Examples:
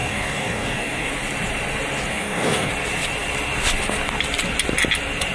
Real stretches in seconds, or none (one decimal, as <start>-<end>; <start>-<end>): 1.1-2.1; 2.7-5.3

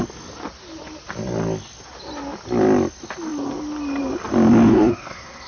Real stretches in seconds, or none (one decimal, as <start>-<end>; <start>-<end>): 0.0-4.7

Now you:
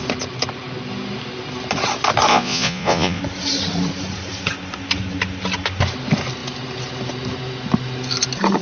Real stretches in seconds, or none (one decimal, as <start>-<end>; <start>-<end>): 0.0-2.3; 3.2-8.6

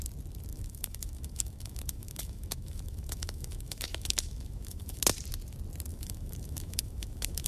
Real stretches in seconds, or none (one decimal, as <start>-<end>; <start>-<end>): 0.0-0.5; 5.0-5.9